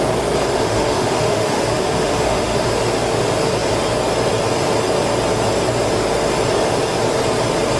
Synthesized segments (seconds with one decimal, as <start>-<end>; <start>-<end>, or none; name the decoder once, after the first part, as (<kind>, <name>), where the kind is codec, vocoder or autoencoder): 0.5-2.6 (autoencoder, DAC-VAE)